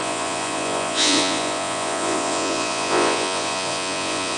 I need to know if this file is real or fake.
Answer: fake